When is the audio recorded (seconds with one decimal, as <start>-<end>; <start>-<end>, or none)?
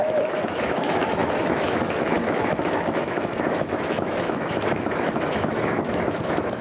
none